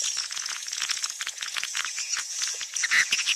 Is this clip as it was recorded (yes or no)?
no